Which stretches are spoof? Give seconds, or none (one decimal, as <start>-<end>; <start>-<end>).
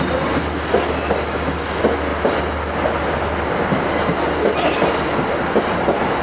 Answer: none